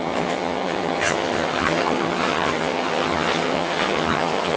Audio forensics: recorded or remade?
remade